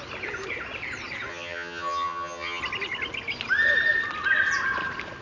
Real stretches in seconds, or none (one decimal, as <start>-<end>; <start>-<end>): 0.0-1.3; 2.6-5.2